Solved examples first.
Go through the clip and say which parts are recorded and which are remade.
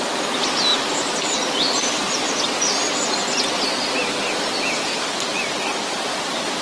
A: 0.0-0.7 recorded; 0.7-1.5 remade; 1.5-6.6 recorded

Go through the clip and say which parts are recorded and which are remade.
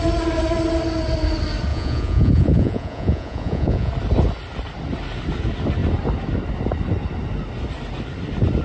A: 0.0-1.7 recorded; 1.7-3.9 remade; 3.9-8.6 recorded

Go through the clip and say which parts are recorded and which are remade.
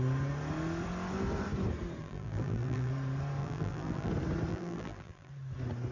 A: 0.0-2.0 recorded; 2.0-2.9 remade; 2.9-3.4 recorded; 3.4-4.1 remade; 4.1-4.5 recorded; 4.5-5.3 remade; 5.3-5.9 recorded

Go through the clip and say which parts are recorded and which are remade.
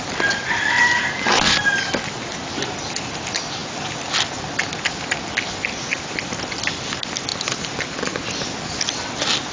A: 0.0-9.5 recorded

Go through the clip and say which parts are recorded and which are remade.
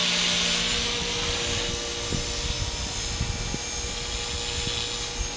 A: 0.0-5.4 recorded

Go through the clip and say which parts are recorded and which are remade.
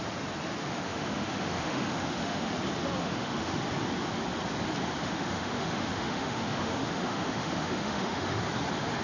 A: 0.0-0.6 recorded; 0.6-2.5 remade; 2.5-3.0 recorded; 3.0-3.6 remade; 3.6-5.0 recorded; 5.0-8.4 remade; 8.4-9.0 recorded